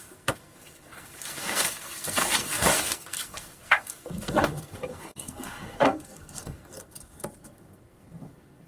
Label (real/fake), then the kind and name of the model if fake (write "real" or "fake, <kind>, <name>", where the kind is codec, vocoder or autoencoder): fake, codec, SNAC